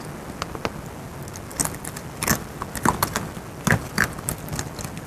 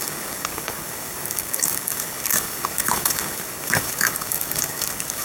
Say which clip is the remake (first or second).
second